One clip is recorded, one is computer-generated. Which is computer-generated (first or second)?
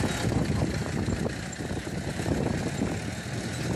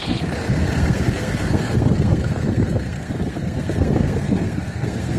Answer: second